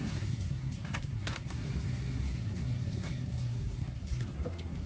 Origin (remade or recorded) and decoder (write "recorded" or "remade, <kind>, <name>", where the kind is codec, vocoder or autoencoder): remade, codec, SNAC